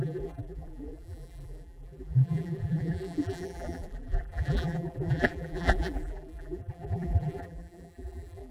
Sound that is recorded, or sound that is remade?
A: remade